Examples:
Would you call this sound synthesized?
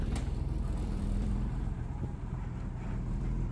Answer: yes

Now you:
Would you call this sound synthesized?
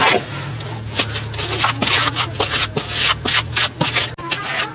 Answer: no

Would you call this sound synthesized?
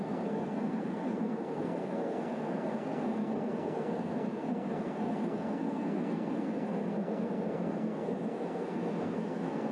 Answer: yes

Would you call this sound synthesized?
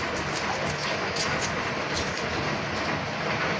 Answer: no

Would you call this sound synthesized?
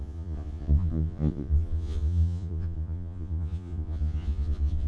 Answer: yes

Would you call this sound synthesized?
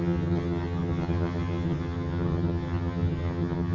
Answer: yes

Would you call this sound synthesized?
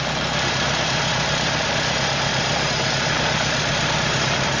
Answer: yes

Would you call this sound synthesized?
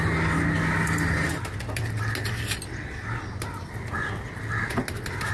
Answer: no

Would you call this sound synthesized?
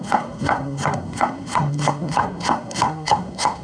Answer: yes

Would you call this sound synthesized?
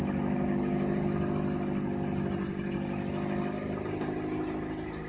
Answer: no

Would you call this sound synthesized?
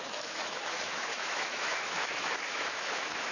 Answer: yes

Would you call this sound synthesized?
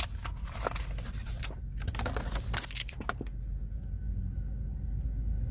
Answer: no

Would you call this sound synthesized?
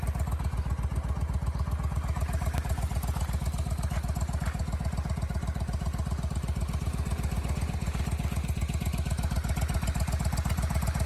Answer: no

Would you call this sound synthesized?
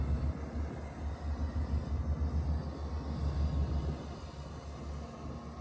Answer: no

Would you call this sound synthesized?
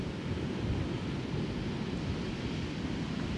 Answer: no